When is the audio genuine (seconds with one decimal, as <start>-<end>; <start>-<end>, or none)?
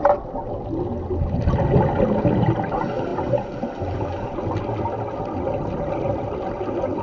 0.0-7.0